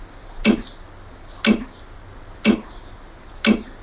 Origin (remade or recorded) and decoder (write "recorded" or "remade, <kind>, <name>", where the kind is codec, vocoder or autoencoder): recorded